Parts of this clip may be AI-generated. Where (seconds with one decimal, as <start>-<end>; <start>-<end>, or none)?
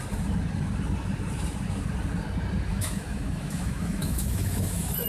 2.7-5.1